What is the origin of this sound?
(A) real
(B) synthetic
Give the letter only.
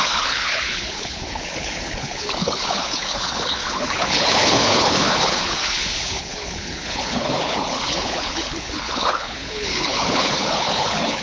B